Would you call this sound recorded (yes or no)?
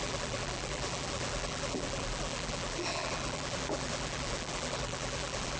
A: no